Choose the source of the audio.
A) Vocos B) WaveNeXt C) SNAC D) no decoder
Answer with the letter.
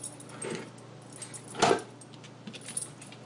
D